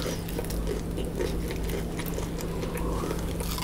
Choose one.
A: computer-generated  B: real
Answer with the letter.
B